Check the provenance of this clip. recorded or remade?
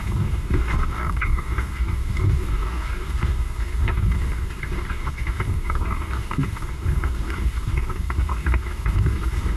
remade